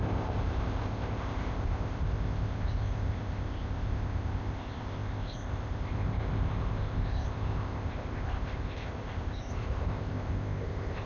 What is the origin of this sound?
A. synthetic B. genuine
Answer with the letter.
A